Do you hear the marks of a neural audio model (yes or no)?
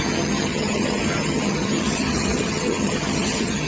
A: yes